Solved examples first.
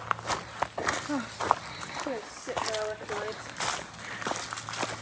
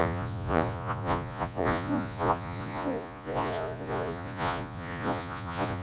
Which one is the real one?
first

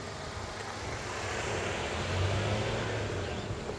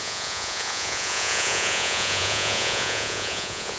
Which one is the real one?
first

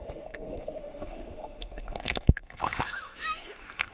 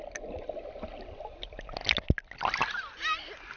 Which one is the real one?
second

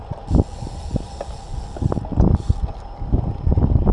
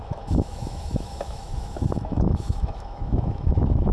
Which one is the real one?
first